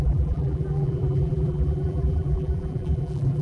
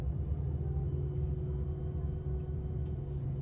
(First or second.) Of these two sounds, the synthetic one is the first